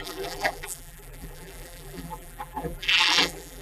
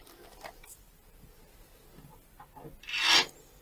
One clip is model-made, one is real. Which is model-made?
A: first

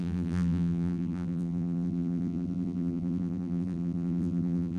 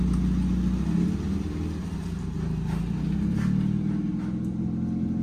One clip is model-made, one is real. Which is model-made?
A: first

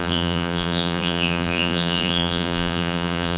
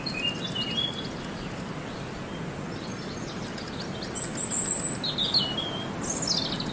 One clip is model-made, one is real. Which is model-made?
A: first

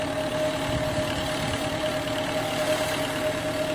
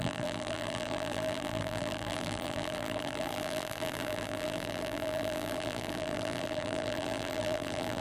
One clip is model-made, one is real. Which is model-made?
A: second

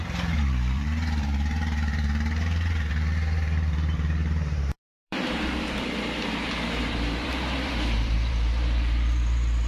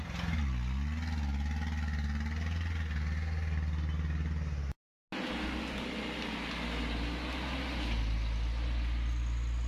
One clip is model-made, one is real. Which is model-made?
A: first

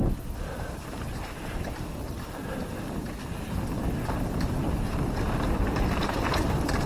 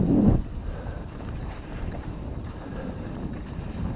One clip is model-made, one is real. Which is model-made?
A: second